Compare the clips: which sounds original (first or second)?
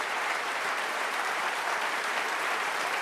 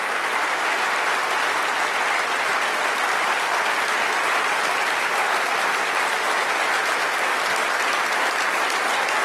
second